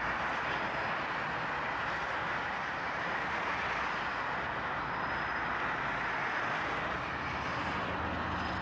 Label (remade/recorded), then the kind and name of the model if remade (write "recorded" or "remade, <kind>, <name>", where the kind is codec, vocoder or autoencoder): recorded